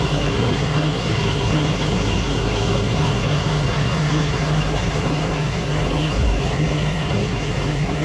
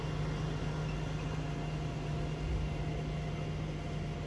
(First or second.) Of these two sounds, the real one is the second